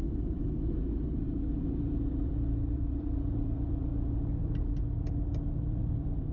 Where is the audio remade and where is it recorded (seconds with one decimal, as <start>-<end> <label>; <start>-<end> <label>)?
0.0-3.9 remade; 3.9-5.8 recorded; 5.8-6.3 remade